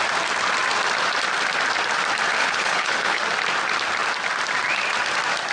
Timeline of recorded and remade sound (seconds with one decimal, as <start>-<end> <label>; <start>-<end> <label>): 0.0-2.4 recorded; 2.4-3.2 remade; 3.2-5.5 recorded